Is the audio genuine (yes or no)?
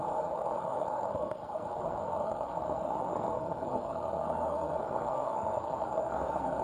no